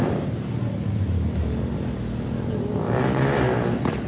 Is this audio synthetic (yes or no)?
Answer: no